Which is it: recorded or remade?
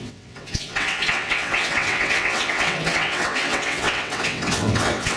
remade